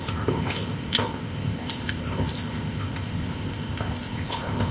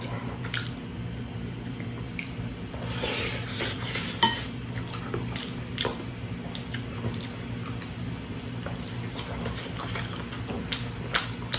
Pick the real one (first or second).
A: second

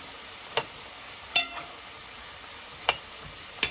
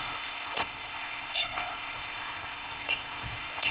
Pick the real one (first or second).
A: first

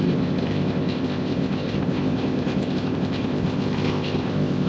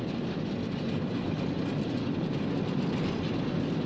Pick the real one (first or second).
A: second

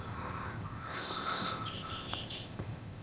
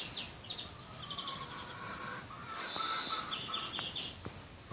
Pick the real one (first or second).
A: second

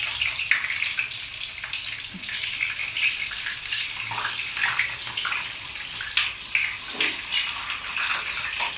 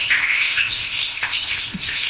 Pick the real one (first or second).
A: first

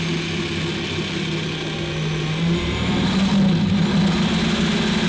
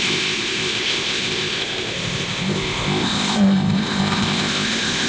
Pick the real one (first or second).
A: first